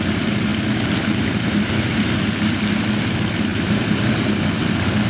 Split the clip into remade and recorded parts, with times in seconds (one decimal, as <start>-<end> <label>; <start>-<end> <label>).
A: 0.0-0.5 recorded; 0.5-2.1 remade; 2.1-3.5 recorded; 3.5-4.5 remade; 4.5-5.1 recorded